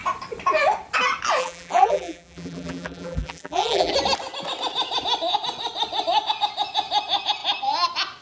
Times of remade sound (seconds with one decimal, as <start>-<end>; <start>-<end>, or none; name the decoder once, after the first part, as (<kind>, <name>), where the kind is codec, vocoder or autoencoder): 1.4-3.9 (vocoder, BigVGAN v2)